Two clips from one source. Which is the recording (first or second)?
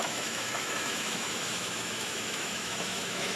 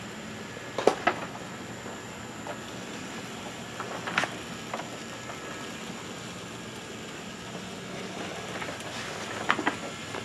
second